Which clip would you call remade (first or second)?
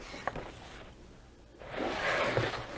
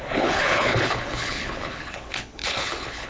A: second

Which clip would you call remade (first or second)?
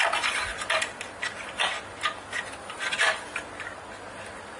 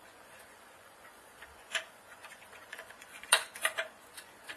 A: second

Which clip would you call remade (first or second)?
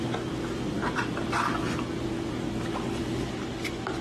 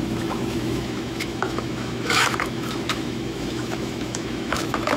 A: second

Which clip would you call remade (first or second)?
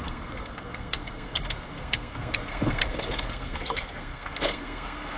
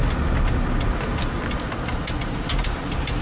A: first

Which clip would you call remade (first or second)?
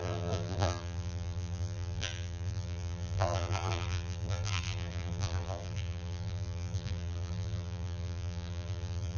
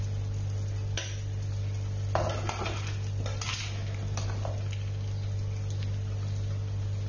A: first